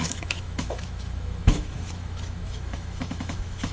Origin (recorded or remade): remade